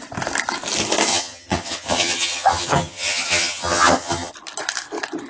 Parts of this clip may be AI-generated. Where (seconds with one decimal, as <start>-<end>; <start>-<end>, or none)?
1.1-4.3